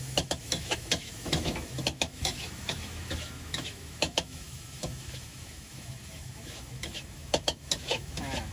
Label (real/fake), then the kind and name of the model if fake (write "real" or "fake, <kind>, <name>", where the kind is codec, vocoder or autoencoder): fake, autoencoder, DAC-VAE